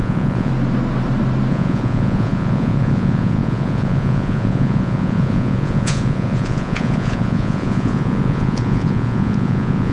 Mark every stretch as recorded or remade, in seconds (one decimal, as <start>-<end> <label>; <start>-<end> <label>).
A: 0.0-0.5 remade; 0.5-1.5 recorded; 1.5-9.9 remade